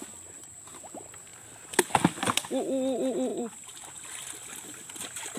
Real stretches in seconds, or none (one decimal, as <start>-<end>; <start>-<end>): 0.0-3.3; 3.9-5.4